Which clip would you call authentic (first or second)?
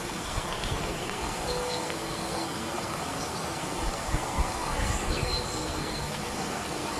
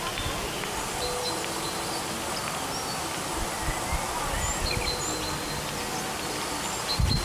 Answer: second